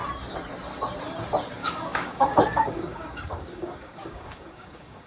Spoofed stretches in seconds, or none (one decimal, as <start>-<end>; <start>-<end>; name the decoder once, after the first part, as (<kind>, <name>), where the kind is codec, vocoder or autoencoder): 1.6-5.1 (codec, DAC)